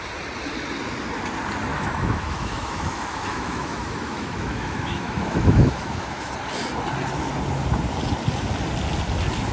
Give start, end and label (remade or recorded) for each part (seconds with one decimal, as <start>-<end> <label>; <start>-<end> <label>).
0.0-1.7 recorded; 1.7-6.3 remade; 6.3-9.5 recorded